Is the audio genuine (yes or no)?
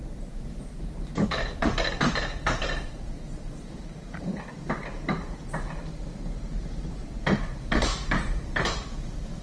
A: no